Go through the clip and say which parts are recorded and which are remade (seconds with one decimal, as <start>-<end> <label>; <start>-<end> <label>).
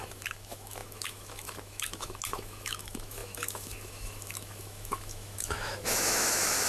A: 0.0-6.7 remade